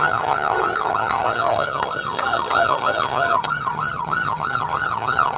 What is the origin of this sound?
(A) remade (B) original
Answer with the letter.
A